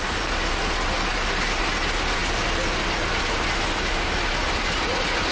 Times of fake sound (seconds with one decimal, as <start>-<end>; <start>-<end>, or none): none